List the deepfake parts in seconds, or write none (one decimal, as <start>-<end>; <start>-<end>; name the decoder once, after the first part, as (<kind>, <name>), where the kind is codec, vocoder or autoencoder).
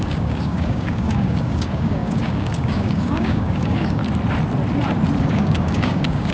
0.0-4.0 (codec, DAC); 5.2-6.3